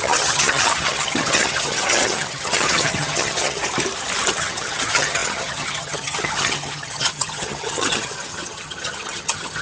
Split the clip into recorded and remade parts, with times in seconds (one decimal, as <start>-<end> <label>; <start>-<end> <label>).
0.0-3.6 remade; 3.6-4.3 recorded; 4.3-9.6 remade